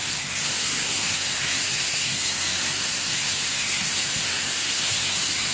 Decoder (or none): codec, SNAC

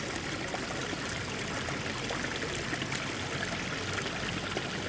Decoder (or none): none